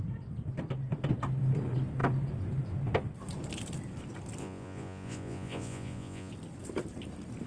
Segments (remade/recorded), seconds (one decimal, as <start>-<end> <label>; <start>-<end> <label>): 0.0-4.4 recorded; 4.4-6.3 remade; 6.3-7.5 recorded